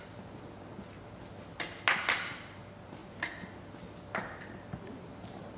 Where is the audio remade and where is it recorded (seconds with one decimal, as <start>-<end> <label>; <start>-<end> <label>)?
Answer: 0.0-5.6 recorded